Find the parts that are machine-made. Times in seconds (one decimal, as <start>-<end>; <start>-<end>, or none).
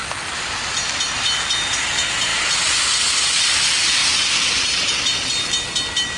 2.3-2.9; 4.0-4.9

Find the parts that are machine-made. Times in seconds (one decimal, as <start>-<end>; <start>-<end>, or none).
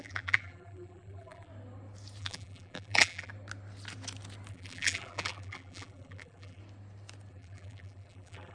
0.0-1.5; 2.2-3.3; 4.5-6.6; 7.3-8.5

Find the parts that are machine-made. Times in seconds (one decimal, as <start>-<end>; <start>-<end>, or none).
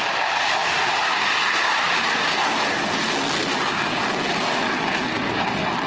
none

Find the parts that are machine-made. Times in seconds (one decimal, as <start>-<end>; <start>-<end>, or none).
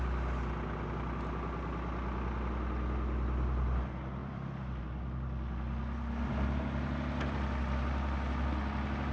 4.2-4.8